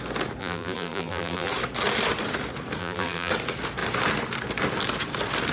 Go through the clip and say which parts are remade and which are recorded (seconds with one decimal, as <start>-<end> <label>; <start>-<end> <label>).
0.0-0.4 recorded; 0.4-1.5 remade; 1.5-2.8 recorded; 2.8-3.3 remade; 3.3-5.5 recorded